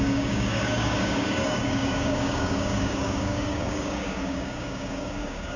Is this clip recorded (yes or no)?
no